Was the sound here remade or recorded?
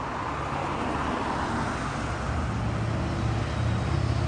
recorded